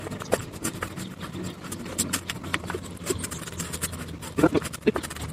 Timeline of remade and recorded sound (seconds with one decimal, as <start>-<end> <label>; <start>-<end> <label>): 0.0-2.5 recorded; 2.5-3.4 remade; 3.4-5.3 recorded